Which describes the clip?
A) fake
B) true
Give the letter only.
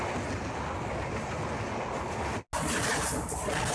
B